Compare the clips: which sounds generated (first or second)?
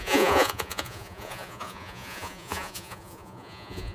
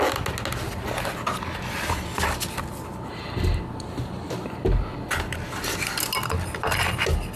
first